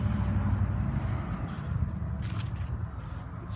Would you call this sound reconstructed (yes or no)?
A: no